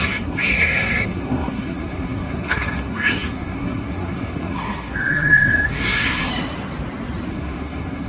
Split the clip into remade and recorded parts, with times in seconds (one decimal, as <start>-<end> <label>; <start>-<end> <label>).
0.0-6.3 remade; 6.3-7.3 recorded; 7.3-8.1 remade